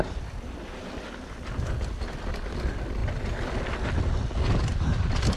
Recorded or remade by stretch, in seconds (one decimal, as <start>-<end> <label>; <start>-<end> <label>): 0.0-5.4 recorded

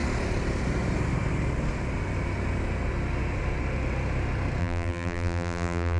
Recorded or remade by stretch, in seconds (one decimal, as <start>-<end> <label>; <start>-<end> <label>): 0.0-4.6 recorded; 4.6-6.0 remade

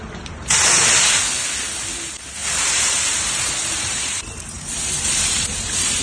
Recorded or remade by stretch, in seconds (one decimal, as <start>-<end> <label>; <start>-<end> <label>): 0.0-2.4 recorded; 2.4-6.0 remade

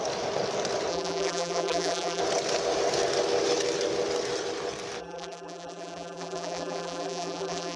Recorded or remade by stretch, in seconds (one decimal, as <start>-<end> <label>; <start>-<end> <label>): 0.0-0.9 recorded; 0.9-2.2 remade; 2.2-5.0 recorded; 5.0-7.8 remade